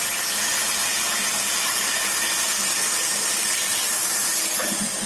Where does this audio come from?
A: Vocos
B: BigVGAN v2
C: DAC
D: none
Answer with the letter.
D